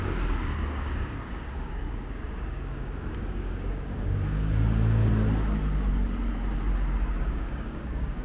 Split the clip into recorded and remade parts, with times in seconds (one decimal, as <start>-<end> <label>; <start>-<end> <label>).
0.0-5.1 remade; 5.1-7.2 recorded; 7.2-8.2 remade